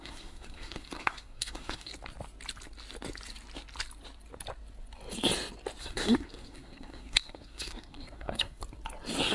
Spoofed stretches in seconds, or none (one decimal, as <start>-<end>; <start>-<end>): 0.0-1.9; 5.8-8.6